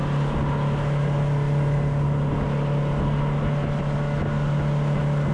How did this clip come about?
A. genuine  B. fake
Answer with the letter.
A